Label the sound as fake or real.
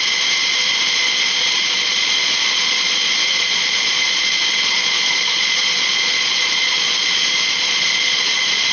fake